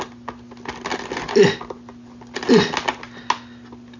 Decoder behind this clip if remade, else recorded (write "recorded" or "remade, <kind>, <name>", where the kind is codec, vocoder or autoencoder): recorded